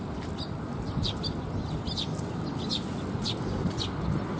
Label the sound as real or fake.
real